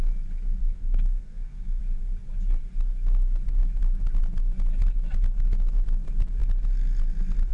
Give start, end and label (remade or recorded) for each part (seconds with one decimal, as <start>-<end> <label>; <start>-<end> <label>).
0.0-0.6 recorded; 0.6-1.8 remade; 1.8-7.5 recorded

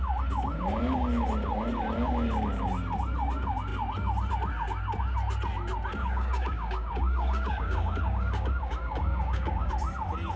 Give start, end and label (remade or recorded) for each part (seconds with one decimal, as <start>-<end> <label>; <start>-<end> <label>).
0.0-6.0 recorded; 6.0-9.7 remade; 9.7-10.4 recorded

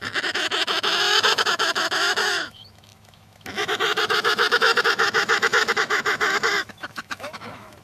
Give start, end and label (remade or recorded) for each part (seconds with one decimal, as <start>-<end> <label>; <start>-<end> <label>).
0.0-7.8 remade